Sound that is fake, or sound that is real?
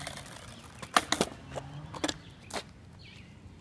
real